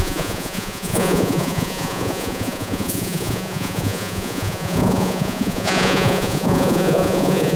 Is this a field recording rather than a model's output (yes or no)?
no